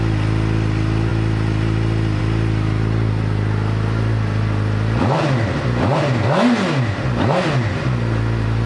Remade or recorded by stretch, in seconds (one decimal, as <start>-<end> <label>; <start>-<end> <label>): 0.0-8.7 recorded